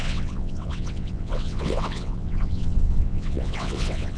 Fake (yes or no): yes